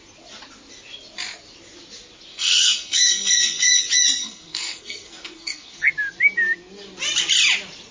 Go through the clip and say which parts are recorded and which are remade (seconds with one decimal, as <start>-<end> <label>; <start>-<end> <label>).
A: 0.0-2.3 recorded; 2.3-3.8 remade; 3.8-4.2 recorded; 4.2-5.9 remade; 5.9-7.9 recorded